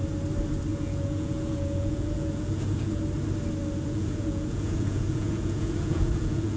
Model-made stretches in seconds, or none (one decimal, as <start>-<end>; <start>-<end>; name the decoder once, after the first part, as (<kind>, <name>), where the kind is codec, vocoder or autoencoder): 0.7-3.0 (vocoder, Vocos); 3.6-6.6